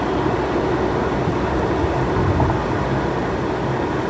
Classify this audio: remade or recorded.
recorded